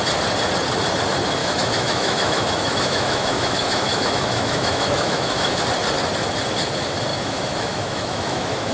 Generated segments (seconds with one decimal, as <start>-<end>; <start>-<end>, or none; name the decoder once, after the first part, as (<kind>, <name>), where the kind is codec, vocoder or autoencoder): 1.4-5.6 (autoencoder, DAC-VAE); 7.1-8.7